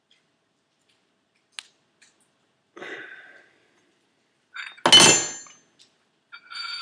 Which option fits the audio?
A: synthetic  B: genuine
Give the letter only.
B